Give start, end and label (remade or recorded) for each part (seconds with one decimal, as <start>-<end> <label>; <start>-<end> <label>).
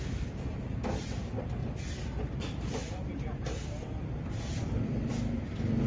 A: 0.0-1.6 recorded; 1.6-5.1 remade; 5.1-5.9 recorded